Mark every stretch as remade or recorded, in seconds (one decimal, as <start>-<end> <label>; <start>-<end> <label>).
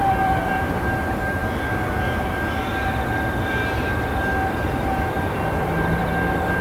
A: 0.0-1.4 remade; 1.4-3.0 recorded; 3.0-6.0 remade; 6.0-6.6 recorded